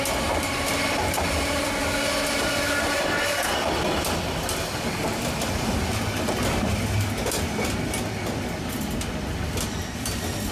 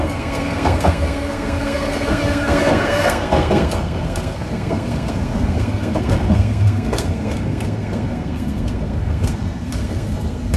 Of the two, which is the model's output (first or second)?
second